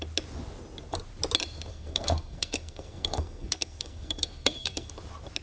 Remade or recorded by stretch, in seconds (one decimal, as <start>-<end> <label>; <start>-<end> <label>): 0.0-1.7 recorded; 1.7-4.9 remade; 4.9-5.4 recorded